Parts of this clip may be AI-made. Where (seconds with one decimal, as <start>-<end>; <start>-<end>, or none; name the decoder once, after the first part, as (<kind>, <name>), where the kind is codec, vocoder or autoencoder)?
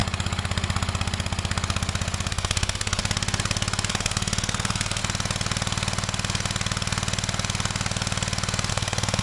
2.3-3.0 (codec, SNAC); 3.9-5.0; 8.7-9.2